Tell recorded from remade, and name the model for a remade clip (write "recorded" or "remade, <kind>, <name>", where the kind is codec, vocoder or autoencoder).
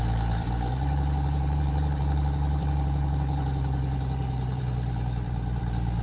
remade, vocoder, BigVGAN v2